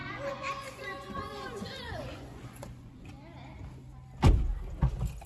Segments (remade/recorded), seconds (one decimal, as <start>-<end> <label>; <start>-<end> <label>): 0.0-3.1 remade; 3.1-5.3 recorded